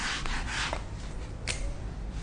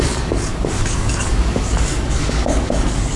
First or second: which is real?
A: first